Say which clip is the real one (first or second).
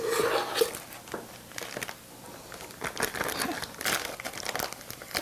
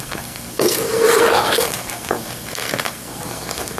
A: first